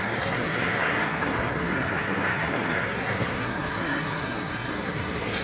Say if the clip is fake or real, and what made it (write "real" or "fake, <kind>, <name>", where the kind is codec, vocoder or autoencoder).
fake, codec, SNAC